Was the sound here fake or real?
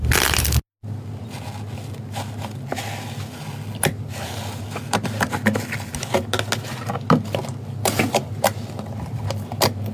real